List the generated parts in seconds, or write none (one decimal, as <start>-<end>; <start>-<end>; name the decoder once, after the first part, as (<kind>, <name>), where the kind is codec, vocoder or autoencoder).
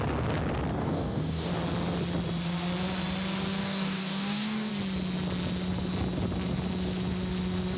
0.8-1.5 (codec, DAC); 3.6-4.7